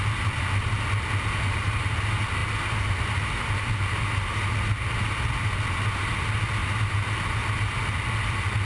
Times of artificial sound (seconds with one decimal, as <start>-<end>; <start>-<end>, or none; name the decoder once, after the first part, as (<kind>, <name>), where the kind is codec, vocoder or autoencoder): none